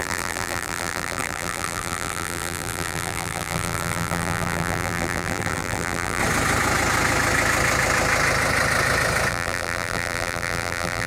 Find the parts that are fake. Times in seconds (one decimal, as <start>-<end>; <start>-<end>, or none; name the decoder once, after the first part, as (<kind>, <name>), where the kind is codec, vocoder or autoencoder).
0.0-6.2 (vocoder, BigVGAN v2); 9.3-11.1